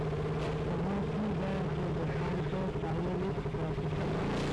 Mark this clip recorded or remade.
recorded